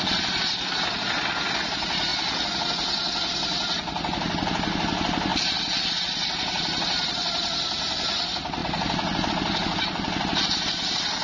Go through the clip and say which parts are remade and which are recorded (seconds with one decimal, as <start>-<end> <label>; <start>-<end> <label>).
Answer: 0.0-11.2 recorded